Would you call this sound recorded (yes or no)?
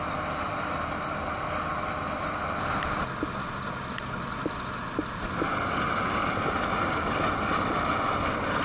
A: yes